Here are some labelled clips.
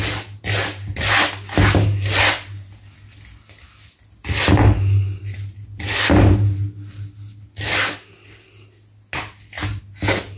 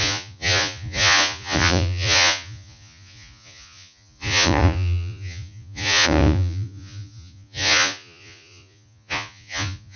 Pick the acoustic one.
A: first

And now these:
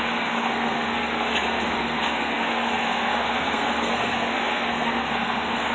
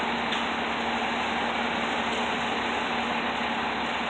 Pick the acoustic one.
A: second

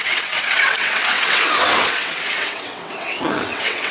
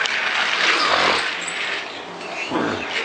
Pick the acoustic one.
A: second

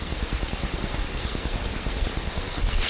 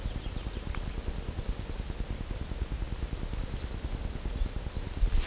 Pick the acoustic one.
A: second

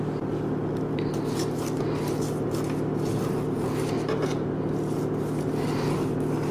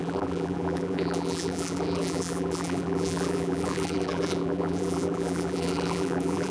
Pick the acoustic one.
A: first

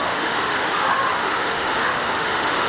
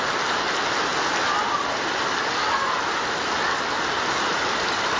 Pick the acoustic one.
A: second